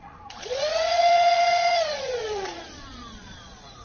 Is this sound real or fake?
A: fake